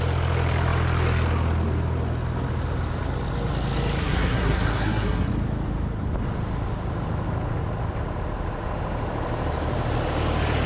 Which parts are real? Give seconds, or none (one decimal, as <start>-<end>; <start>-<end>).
0.0-4.0; 5.3-10.7